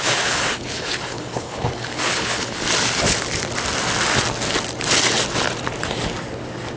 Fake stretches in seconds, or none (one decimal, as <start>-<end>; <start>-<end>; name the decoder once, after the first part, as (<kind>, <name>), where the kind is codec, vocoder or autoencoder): 0.0-2.6 (codec, HILCodec)